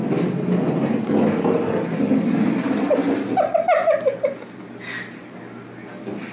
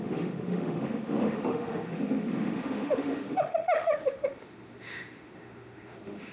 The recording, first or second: first